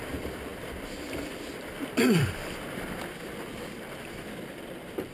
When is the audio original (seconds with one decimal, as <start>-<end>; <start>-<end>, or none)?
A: none